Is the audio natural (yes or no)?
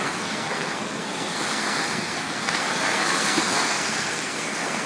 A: no